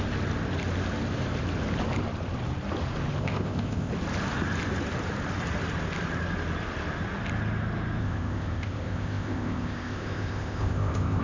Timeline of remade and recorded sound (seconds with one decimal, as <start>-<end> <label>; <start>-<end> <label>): 0.0-3.2 recorded; 3.2-3.9 remade; 3.9-8.0 recorded; 8.0-11.2 remade

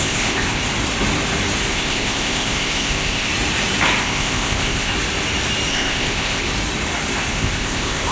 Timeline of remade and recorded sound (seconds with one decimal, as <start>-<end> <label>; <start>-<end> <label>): 0.0-0.6 remade; 0.6-1.7 recorded; 1.7-3.3 remade; 3.3-4.0 recorded; 4.0-4.9 remade; 4.9-5.7 recorded; 5.7-6.5 remade; 6.5-7.3 recorded; 7.3-8.1 remade

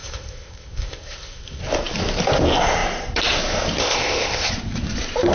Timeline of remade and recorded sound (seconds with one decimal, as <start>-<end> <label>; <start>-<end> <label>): 0.0-1.6 remade; 1.6-3.8 recorded; 3.8-4.5 remade; 4.5-5.3 recorded

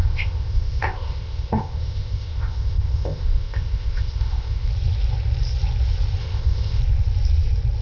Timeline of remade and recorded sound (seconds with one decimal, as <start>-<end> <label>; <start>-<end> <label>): 0.0-4.7 remade; 4.7-6.2 recorded; 6.2-6.8 remade; 6.8-7.8 recorded